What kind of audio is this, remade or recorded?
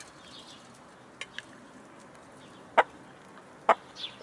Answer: recorded